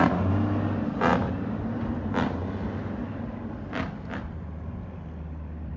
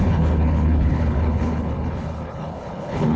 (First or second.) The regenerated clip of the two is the second